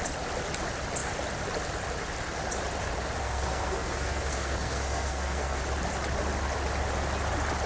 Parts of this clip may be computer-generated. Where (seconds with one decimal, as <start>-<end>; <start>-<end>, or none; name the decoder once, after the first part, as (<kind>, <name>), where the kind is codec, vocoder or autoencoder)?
3.2-5.6 (codec, SNAC)